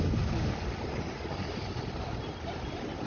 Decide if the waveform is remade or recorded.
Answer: recorded